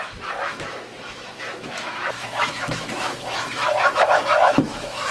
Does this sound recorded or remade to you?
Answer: remade